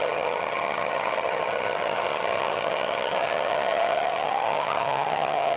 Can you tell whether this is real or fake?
fake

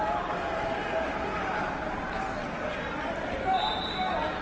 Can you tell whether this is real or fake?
real